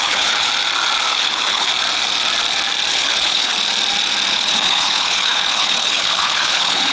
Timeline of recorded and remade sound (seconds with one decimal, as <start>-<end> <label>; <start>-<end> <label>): 0.0-0.5 remade; 0.5-1.1 recorded; 1.1-1.7 remade; 1.7-2.9 recorded; 2.9-3.5 remade; 3.5-4.3 recorded; 4.3-6.9 remade